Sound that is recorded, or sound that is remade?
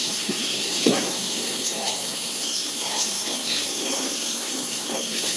remade